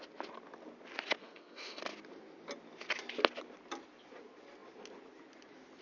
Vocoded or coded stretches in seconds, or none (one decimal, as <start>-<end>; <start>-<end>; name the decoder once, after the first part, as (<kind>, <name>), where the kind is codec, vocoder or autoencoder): 1.2-1.8 (codec, SNAC)